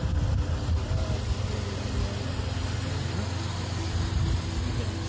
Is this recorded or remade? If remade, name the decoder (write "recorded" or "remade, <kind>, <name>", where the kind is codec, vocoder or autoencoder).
recorded